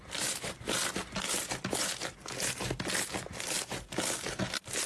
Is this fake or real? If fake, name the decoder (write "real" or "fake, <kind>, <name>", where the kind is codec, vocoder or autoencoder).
real